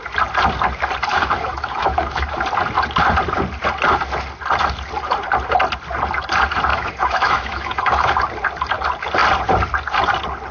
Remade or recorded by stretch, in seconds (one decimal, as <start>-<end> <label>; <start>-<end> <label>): 0.0-1.1 recorded; 1.1-2.4 remade; 2.4-6.7 recorded; 6.7-8.2 remade; 8.2-10.5 recorded